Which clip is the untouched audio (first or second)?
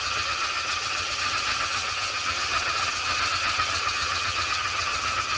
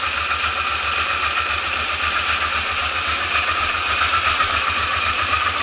second